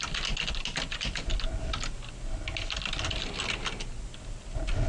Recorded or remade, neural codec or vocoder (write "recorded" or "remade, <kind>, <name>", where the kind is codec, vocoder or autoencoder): recorded